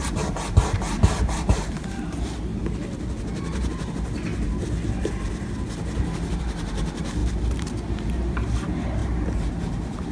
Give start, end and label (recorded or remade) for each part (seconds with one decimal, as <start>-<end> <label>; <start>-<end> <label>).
0.0-10.1 recorded